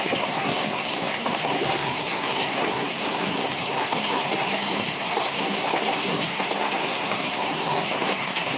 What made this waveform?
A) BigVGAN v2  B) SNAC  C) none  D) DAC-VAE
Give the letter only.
B